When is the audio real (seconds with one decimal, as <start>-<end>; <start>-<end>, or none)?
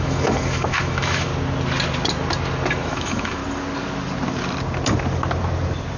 1.3-2.7; 3.4-6.0